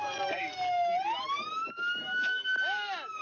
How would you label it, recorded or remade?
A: recorded